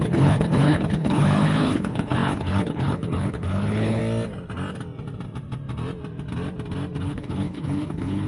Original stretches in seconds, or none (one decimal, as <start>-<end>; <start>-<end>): 4.0-7.0